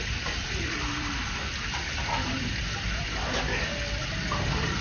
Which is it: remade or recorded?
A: recorded